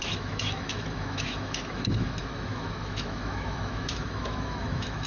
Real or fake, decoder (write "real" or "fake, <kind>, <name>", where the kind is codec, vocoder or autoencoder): fake, autoencoder, DAC-VAE